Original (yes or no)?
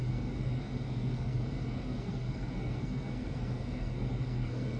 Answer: no